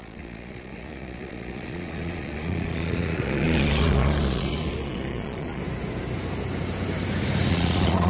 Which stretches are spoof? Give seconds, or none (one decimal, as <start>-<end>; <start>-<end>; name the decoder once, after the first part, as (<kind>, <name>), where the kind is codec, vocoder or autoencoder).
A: 0.0-5.6 (vocoder, Vocos); 7.5-8.1